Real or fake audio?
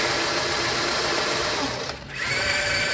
fake